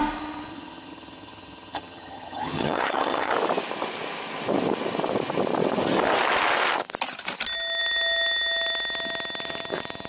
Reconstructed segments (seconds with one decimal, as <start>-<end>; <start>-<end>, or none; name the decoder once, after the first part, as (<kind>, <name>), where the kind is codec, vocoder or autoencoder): 0.5-3.3 (vocoder, HiFi-GAN)